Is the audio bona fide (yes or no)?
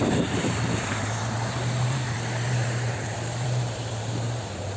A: no